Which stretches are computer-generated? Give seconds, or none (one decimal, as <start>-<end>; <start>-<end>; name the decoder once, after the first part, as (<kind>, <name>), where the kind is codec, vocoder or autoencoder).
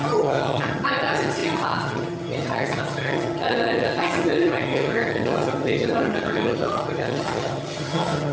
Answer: 0.0-8.3 (vocoder, HiFi-GAN)